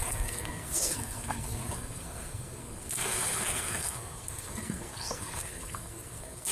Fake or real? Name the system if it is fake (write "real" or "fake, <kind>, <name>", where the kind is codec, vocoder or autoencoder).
fake, codec, SNAC